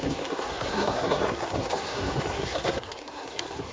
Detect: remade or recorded remade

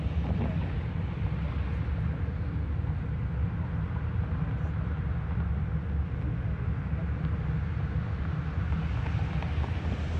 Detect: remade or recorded recorded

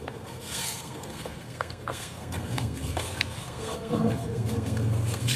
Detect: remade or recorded remade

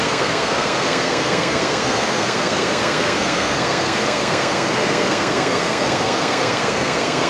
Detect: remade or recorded remade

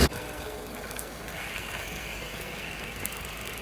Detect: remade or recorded remade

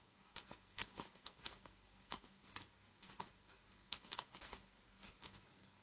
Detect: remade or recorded remade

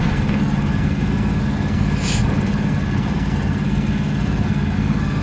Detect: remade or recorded remade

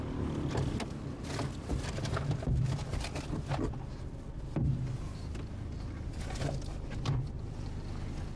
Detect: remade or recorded recorded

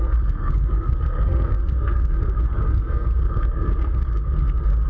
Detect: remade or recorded remade